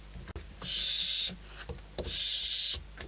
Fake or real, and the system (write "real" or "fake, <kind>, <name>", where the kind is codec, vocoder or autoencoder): real